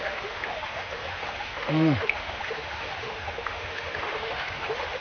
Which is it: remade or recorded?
remade